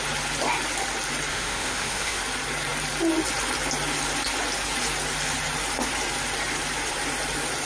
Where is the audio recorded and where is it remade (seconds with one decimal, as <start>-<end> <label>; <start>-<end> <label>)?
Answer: 0.0-1.3 recorded; 1.3-2.2 remade; 2.2-7.7 recorded